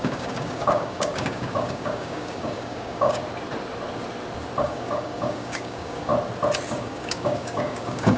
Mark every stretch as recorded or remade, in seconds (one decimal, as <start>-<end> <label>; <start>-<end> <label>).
0.0-3.2 remade; 3.2-4.6 recorded; 4.6-6.1 remade; 6.1-6.7 recorded; 6.7-8.2 remade